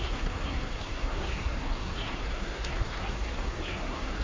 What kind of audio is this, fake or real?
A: fake